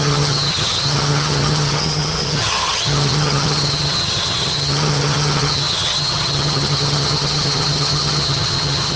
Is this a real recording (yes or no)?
no